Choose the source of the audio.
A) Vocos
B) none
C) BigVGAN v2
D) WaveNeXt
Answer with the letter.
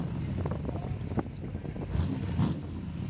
B